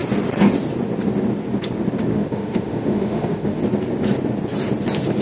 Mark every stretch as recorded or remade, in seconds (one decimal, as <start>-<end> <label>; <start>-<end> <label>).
0.0-2.1 recorded; 2.1-3.6 remade; 3.6-5.2 recorded